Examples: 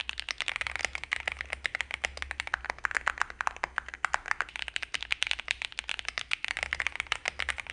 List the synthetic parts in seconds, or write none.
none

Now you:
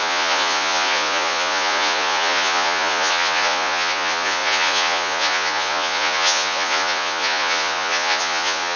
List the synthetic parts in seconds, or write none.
0.0-8.8 (vocoder, Vocos)